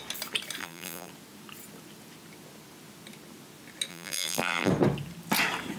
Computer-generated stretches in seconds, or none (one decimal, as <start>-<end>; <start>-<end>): 0.6-1.1; 3.9-4.7